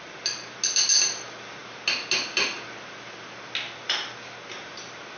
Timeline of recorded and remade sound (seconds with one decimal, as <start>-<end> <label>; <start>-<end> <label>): 0.0-5.2 recorded